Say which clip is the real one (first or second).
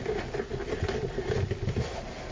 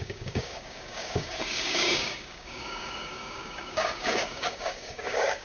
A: first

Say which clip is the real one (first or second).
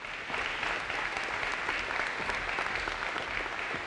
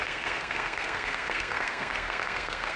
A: first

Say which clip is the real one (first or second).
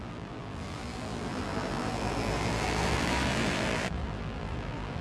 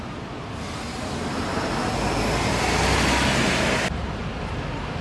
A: second